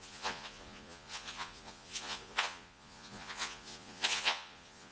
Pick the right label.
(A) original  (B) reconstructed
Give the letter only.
B